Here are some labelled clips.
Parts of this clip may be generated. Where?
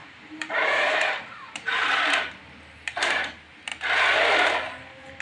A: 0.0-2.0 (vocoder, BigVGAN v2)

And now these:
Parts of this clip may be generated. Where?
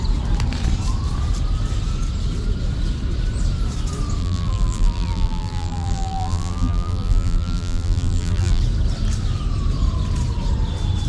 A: 4.2-8.6 (vocoder, BigVGAN v2)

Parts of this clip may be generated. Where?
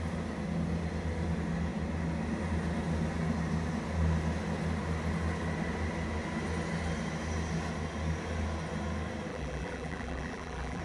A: 9.3-10.8 (vocoder, BigVGAN v2)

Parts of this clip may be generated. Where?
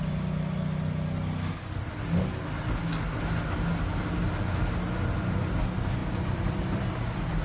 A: 6.0-7.0 (vocoder, BigVGAN v2)